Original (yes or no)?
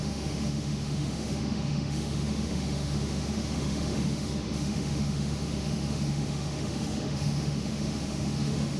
no